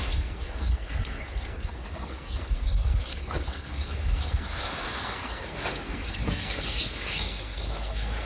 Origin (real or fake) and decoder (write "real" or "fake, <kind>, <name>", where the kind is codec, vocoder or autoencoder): fake, codec, SNAC